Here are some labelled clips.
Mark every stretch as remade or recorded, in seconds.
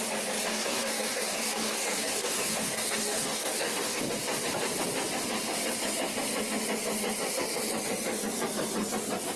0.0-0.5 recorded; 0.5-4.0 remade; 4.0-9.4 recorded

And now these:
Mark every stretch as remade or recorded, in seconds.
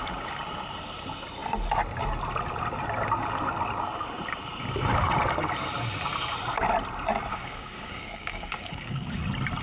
0.0-7.3 recorded; 7.3-9.2 remade; 9.2-9.6 recorded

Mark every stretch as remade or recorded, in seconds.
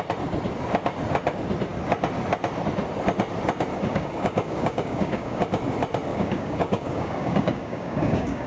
0.0-3.9 recorded; 3.9-5.4 remade; 5.4-6.1 recorded; 6.1-8.5 remade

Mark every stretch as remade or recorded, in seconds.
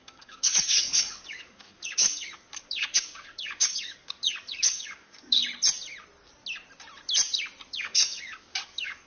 0.0-5.4 remade; 5.4-7.7 recorded; 7.7-9.1 remade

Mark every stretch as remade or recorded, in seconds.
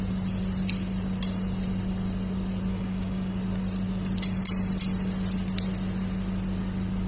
0.0-2.7 recorded; 2.7-3.4 remade; 3.4-7.1 recorded